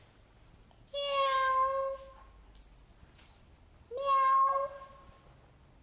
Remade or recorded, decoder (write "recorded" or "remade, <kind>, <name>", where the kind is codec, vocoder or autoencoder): recorded